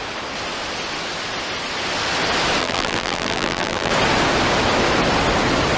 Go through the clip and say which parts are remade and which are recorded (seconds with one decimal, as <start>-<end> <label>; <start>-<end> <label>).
0.0-2.6 recorded; 2.6-3.9 remade; 3.9-5.8 recorded